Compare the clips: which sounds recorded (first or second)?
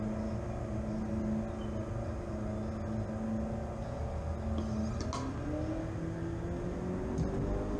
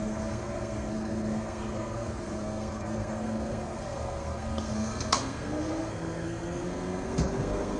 first